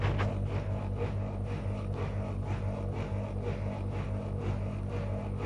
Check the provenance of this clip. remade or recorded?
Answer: recorded